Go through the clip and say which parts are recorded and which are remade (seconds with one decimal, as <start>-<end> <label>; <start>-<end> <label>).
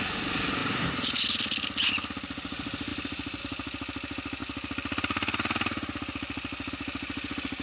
0.0-0.6 recorded; 0.6-1.9 remade; 1.9-2.9 recorded; 2.9-3.4 remade; 3.4-7.6 recorded